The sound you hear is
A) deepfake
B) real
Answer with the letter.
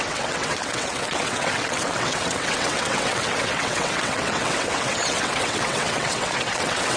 A